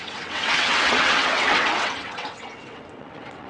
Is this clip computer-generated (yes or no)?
yes